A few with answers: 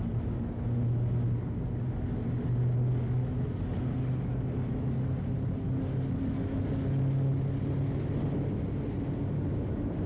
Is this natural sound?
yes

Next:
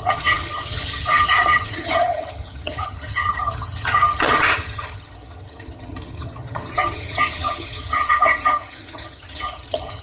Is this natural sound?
no